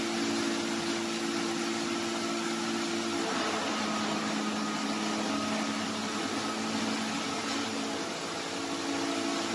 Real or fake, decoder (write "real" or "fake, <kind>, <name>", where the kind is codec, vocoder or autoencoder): real